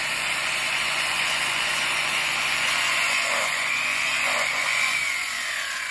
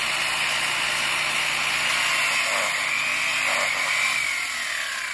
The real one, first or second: second